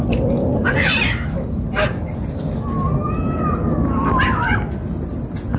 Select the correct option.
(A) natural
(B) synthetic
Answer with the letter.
A